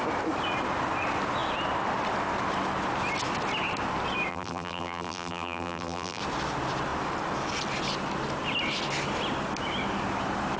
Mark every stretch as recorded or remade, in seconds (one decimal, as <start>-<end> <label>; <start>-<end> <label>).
0.0-4.3 recorded; 4.3-6.2 remade; 6.2-10.6 recorded